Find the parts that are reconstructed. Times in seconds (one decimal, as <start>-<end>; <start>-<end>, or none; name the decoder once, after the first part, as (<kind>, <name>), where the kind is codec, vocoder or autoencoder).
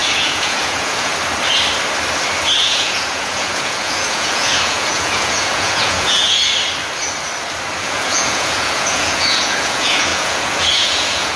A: 0.0-1.1 (vocoder, Vocos); 2.6-6.4; 7.8-11.4